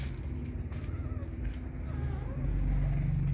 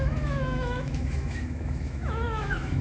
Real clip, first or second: first